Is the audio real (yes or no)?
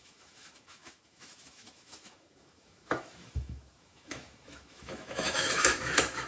no